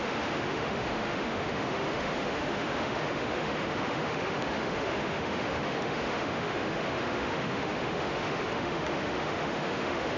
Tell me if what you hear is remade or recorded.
remade